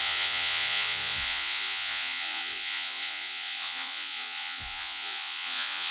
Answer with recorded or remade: remade